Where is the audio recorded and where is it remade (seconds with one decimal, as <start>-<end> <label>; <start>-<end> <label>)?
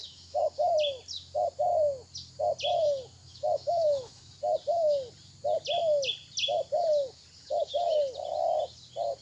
0.0-0.7 remade; 0.7-3.2 recorded; 3.2-4.3 remade; 4.3-7.4 recorded; 7.4-8.0 remade; 8.0-9.2 recorded